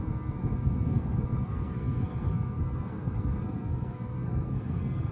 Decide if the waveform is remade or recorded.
remade